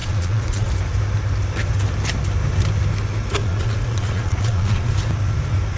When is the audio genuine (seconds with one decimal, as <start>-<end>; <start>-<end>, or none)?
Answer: 0.7-3.4; 4.9-5.8